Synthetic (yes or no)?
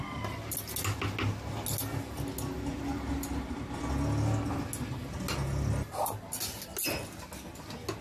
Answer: no